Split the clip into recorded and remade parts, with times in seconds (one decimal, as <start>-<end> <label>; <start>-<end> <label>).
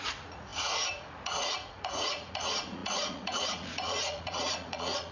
0.0-5.1 remade